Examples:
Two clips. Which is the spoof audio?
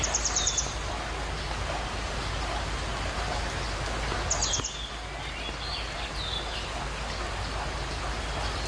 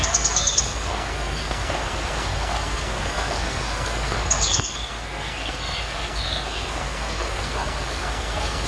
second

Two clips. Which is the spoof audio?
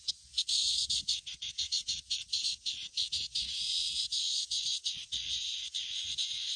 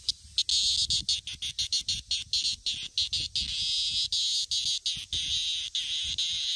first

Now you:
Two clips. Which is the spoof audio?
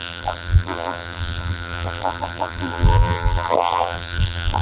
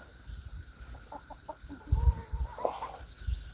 first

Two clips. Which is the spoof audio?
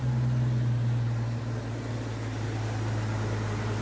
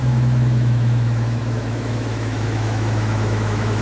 second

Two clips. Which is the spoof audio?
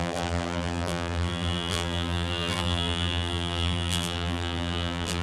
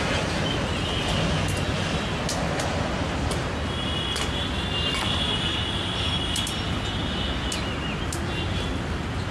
first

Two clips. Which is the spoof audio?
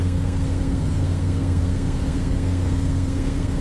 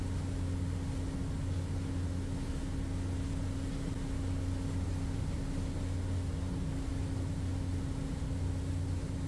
first